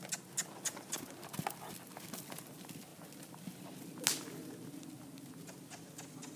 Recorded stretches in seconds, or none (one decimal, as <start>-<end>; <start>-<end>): 0.0-6.4